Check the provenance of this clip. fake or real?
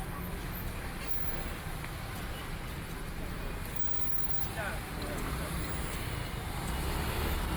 real